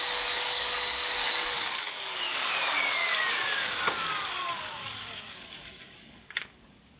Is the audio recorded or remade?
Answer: remade